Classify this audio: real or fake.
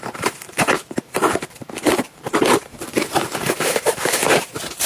fake